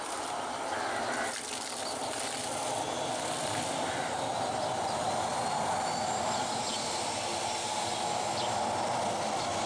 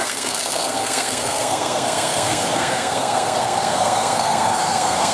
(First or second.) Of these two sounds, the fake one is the second